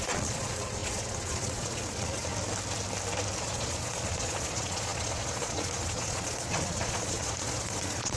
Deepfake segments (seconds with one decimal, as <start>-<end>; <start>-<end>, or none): 0.0-2.3; 3.4-8.2